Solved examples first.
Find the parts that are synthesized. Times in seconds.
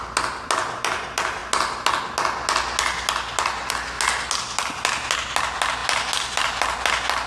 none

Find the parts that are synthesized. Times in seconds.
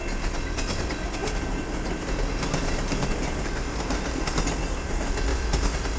1.2-4.2 (vocoder, BigVGAN v2); 5.3-6.0